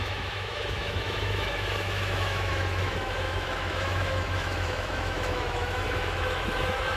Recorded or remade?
remade